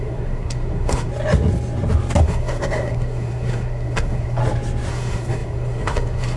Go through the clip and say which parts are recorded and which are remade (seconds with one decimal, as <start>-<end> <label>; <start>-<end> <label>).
0.0-1.1 remade; 1.1-2.2 recorded; 2.2-4.4 remade; 4.4-4.9 recorded; 4.9-6.4 remade